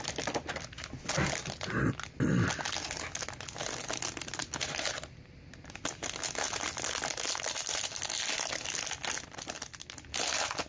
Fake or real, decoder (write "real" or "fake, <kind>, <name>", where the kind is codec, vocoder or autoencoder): real